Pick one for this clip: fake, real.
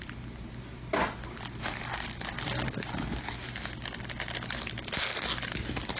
real